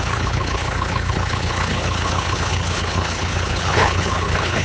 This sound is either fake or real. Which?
fake